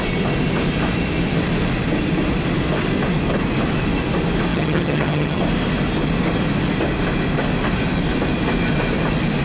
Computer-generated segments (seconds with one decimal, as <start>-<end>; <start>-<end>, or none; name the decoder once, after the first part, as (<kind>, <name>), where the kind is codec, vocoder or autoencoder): 4.5-5.4 (vocoder, HiFi-GAN)